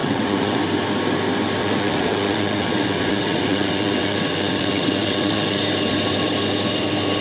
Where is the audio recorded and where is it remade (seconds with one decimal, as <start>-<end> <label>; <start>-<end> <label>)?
0.0-0.6 remade; 0.6-1.6 recorded; 1.6-5.6 remade; 5.6-7.2 recorded